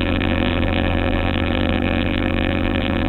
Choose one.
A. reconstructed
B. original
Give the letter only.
A